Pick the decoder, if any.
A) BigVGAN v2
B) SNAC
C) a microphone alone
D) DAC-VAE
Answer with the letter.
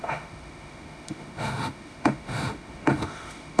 D